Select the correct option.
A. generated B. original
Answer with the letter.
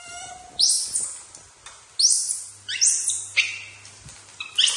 B